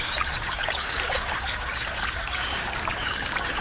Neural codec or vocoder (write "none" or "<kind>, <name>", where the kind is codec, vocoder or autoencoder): codec, DAC